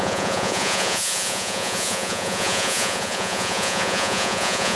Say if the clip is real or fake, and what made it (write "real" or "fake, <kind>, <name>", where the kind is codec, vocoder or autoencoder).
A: fake, vocoder, Vocos